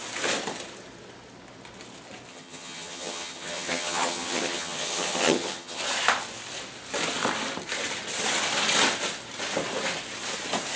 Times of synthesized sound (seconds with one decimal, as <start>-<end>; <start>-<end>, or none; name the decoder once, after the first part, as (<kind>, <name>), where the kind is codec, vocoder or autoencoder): 2.3-5.8 (vocoder, HiFi-GAN)